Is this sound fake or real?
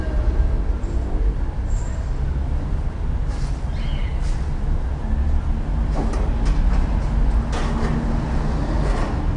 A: real